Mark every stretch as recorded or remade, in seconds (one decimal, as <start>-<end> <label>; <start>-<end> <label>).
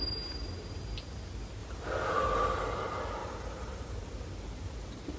0.0-3.2 recorded; 3.2-4.1 remade; 4.1-5.2 recorded